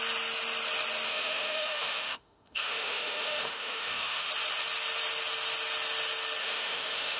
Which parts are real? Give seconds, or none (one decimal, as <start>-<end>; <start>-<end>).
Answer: 0.0-1.1; 4.3-6.4